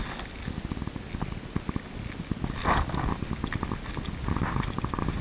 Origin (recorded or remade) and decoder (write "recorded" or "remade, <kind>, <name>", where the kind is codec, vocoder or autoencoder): recorded